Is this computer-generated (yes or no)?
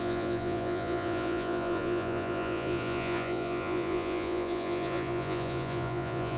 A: yes